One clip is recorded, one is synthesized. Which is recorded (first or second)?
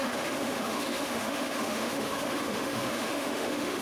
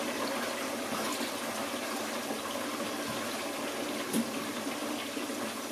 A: second